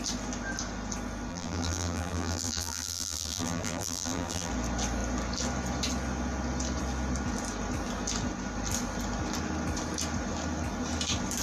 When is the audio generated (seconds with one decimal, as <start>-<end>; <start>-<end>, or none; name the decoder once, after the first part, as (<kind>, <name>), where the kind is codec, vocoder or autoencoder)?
1.3-4.5 (vocoder, BigVGAN v2)